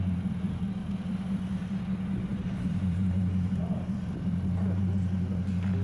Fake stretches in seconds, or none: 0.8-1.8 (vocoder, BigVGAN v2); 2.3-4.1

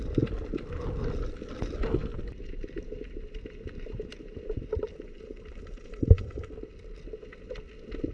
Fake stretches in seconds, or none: 2.0-6.4 (vocoder, BigVGAN v2)

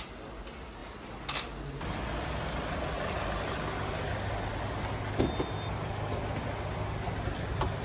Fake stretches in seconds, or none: none

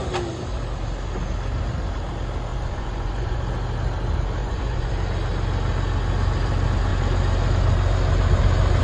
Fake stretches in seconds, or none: 2.5-3.4 (vocoder, Vocos); 4.4-4.9

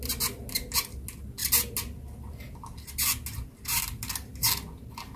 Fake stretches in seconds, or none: none

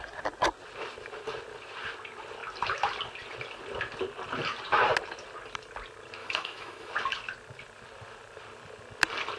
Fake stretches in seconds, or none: 6.2-6.9 (autoencoder, DAC-VAE)

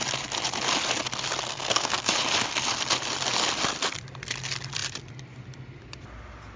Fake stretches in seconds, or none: 1.5-2.1 (codec, SNAC)